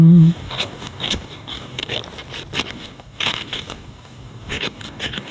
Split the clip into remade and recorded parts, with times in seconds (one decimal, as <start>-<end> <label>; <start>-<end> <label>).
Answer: 0.0-2.0 remade; 2.0-2.7 recorded; 2.7-5.3 remade